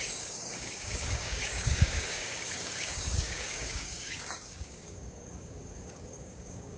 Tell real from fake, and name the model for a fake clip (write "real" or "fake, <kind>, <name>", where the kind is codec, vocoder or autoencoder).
fake, codec, DAC